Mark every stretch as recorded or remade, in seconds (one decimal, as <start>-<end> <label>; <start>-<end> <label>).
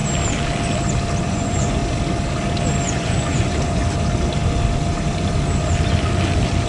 0.0-1.2 recorded; 1.2-1.8 remade; 1.8-2.8 recorded; 2.8-3.8 remade; 3.8-6.7 recorded